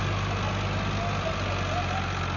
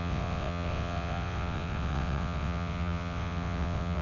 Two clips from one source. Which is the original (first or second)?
first